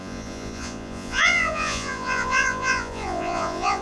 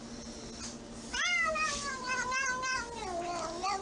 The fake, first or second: first